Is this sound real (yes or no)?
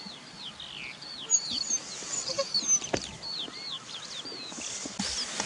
yes